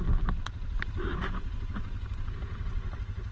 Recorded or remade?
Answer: recorded